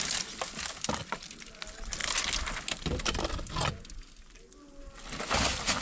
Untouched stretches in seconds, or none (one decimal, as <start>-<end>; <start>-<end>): 0.0-5.8